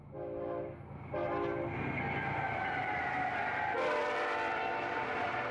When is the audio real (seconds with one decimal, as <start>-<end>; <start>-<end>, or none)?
0.0-4.0